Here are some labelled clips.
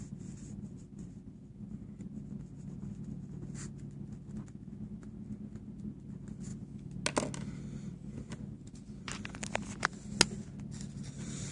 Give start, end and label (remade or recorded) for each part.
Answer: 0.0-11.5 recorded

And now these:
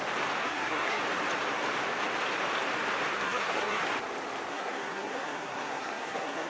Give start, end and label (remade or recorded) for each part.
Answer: 0.0-0.4 recorded; 0.4-1.0 remade; 1.0-3.1 recorded; 3.1-3.9 remade; 3.9-4.5 recorded; 4.5-6.5 remade

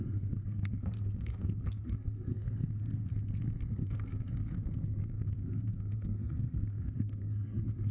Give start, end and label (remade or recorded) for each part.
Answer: 0.0-3.1 remade; 3.1-3.7 recorded; 3.7-7.9 remade

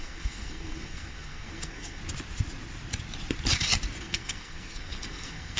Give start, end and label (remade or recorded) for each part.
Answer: 0.0-2.0 remade; 2.0-4.0 recorded; 4.0-5.6 remade